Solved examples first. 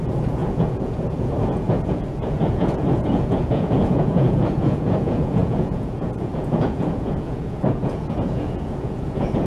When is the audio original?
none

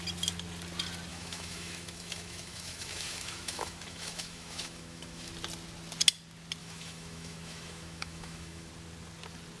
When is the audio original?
0.0-1.1; 5.3-6.6; 8.7-9.6